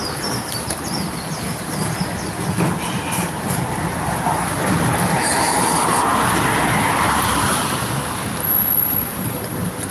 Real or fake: real